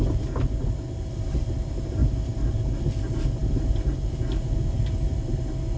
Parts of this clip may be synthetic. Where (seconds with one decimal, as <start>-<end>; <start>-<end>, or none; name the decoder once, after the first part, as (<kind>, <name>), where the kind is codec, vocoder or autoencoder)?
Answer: none